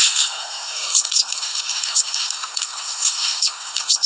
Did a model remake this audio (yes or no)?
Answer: yes